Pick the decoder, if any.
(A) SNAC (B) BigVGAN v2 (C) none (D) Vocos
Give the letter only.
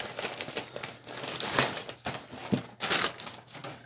C